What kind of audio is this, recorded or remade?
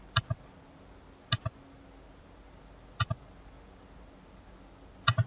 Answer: recorded